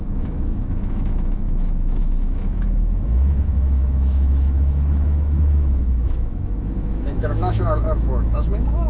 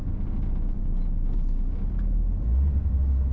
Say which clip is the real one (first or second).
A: second